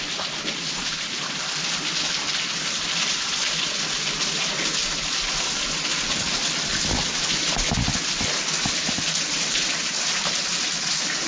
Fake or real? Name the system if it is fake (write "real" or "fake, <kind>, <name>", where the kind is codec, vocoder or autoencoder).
real